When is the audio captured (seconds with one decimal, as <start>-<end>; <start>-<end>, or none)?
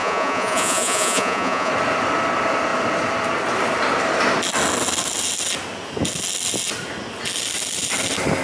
1.7-8.4